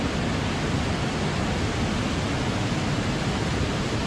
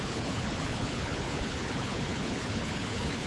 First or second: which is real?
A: first